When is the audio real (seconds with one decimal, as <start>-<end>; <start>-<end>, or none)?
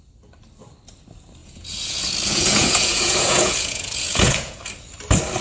0.0-1.4; 4.6-5.4